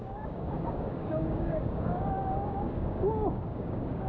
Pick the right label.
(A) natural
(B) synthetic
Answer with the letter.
B